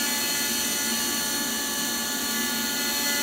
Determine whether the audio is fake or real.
real